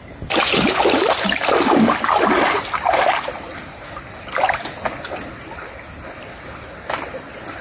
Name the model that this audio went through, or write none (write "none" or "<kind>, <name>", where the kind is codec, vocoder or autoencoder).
none